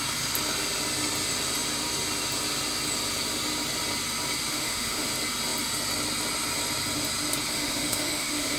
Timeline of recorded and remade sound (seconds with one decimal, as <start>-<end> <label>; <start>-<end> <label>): 0.0-4.5 recorded; 4.5-5.1 remade; 5.1-7.5 recorded; 7.5-8.6 remade